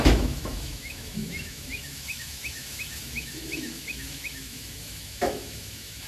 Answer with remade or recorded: remade